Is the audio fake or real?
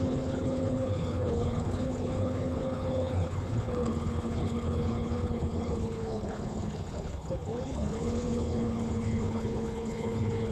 fake